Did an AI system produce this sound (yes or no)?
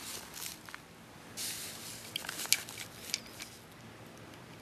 no